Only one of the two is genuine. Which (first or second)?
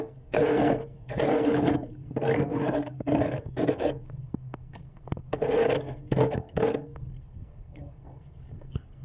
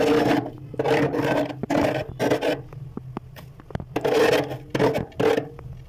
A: second